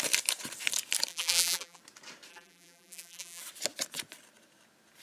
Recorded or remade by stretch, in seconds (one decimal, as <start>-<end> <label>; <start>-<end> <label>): 0.0-1.1 recorded; 1.1-1.8 remade; 1.8-2.3 recorded; 2.3-3.4 remade; 3.4-5.0 recorded